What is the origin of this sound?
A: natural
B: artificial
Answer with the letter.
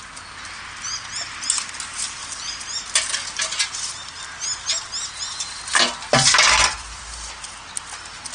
A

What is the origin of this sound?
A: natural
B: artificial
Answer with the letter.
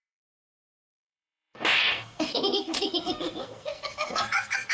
B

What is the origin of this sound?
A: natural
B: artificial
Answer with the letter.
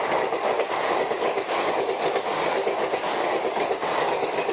B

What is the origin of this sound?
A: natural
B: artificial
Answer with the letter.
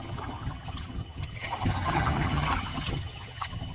B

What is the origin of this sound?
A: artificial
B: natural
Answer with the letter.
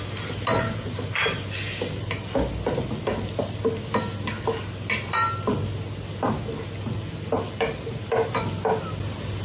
B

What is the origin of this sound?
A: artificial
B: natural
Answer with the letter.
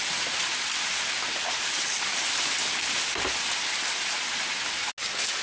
B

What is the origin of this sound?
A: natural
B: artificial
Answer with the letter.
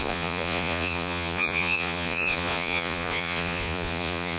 B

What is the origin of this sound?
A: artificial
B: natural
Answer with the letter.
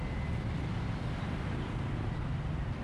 B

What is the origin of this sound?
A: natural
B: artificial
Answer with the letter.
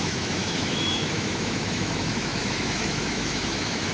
B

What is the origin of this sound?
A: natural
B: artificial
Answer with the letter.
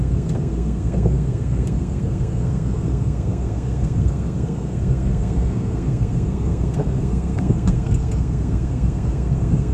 B